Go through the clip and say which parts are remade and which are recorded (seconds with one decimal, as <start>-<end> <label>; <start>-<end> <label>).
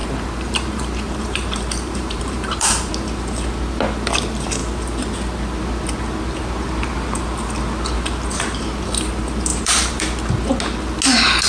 0.0-2.9 remade; 2.9-9.5 recorded; 9.5-10.0 remade; 10.0-11.5 recorded